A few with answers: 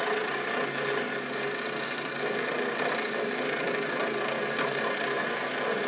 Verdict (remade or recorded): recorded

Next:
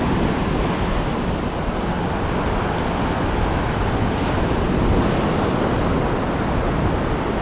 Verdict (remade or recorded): recorded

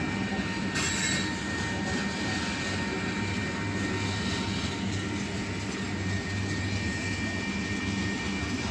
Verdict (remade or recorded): recorded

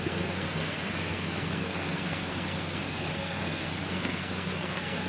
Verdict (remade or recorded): remade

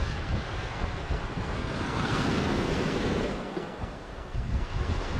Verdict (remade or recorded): remade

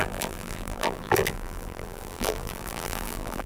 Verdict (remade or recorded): remade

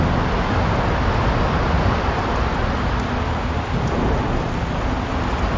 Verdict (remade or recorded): recorded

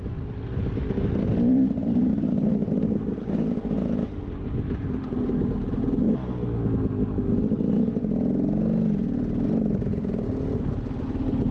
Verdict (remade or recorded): recorded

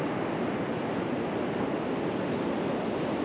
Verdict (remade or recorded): recorded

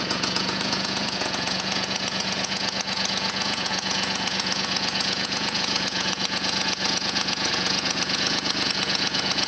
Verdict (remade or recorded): remade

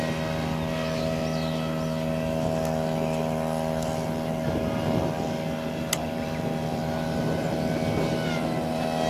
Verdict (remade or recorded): recorded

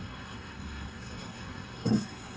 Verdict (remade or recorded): remade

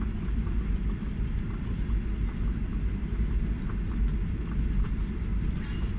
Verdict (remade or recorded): recorded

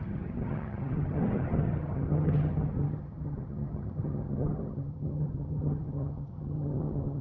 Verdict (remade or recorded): remade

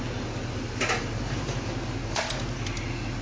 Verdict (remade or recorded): recorded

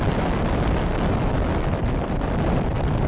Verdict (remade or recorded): recorded